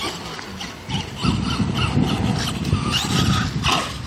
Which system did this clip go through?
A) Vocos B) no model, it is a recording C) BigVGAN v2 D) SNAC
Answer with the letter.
B